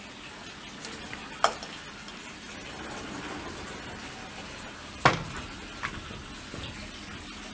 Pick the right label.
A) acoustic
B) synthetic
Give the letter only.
A